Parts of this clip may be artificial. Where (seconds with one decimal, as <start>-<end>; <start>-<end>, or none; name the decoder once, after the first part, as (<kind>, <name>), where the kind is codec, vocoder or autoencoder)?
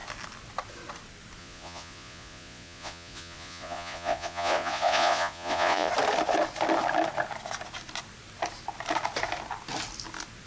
1.4-5.9 (vocoder, Vocos)